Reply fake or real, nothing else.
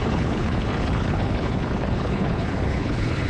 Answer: fake